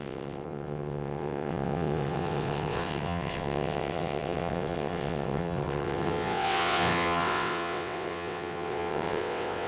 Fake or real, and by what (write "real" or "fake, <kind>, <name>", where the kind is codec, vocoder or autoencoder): fake, vocoder, WaveNeXt